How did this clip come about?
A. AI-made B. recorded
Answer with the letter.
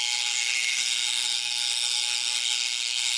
A